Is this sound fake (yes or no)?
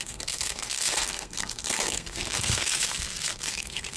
yes